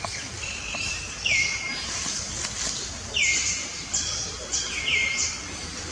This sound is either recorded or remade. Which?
recorded